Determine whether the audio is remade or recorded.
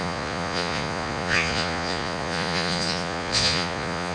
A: remade